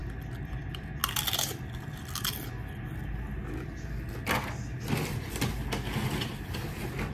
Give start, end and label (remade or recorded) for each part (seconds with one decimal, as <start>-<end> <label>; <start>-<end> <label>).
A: 0.0-7.1 recorded